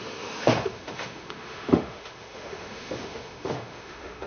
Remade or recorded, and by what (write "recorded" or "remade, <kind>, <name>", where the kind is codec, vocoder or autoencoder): remade, autoencoder, DAC-VAE